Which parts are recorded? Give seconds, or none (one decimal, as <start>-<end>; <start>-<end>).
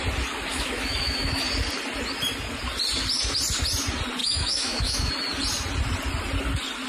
0.0-0.5; 1.4-4.2; 5.1-6.9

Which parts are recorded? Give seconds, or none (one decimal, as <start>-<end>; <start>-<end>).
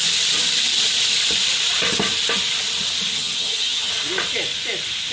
0.0-3.1; 3.9-5.1